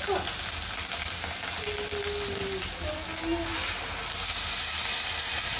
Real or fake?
real